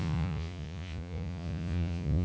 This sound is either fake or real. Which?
fake